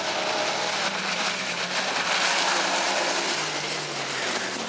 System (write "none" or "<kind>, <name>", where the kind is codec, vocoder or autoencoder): none